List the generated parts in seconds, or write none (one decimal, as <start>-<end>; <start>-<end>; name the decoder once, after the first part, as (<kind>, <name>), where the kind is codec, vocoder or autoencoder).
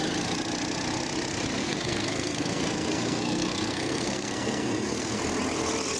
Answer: 1.6-5.2 (codec, SNAC)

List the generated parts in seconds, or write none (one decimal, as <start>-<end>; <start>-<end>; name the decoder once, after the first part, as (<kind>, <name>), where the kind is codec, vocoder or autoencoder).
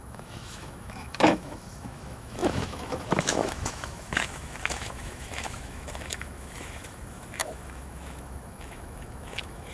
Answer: 0.0-9.7 (autoencoder, DAC-VAE)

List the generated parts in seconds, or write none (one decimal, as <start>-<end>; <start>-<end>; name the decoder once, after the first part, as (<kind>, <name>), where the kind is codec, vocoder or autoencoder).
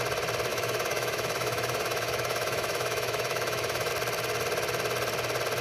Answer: 0.5-3.9 (autoencoder, DAC-VAE)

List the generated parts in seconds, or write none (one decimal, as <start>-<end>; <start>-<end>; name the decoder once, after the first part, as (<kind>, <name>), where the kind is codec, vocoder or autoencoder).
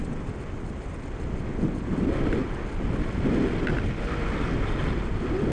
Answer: none